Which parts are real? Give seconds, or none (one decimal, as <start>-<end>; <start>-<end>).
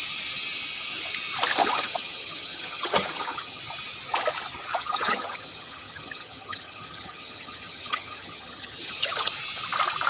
0.0-1.6; 3.6-4.7; 9.3-10.1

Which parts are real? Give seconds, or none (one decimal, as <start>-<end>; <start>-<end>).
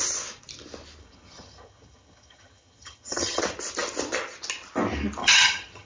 0.0-1.0; 3.4-5.2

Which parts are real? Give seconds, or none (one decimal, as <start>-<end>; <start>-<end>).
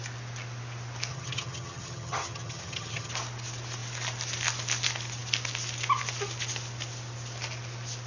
0.0-1.1; 3.1-8.1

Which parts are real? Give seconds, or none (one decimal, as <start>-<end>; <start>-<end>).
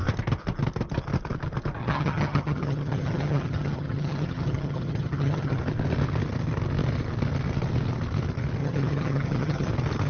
0.0-1.8; 5.6-8.6; 9.7-10.1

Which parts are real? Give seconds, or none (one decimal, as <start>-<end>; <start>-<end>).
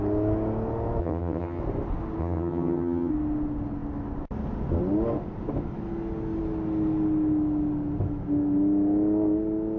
0.0-1.0; 1.6-2.2; 3.1-9.8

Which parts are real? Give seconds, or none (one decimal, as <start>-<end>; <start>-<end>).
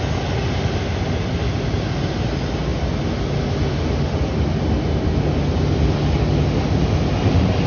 0.0-7.7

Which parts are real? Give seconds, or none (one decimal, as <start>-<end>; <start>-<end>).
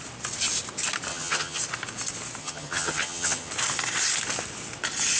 0.0-1.1; 1.6-2.4; 3.5-5.2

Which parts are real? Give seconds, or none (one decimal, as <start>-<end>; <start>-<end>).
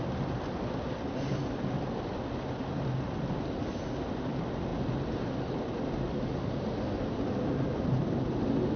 0.0-8.8